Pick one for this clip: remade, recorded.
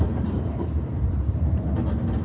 remade